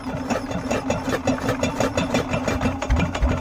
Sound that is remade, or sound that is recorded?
recorded